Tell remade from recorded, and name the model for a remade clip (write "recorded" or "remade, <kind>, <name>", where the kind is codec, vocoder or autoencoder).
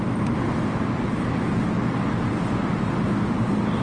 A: recorded